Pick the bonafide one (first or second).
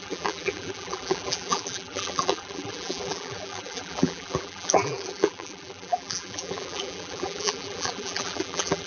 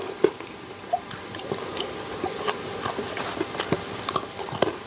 second